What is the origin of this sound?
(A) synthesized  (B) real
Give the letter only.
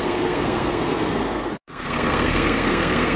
A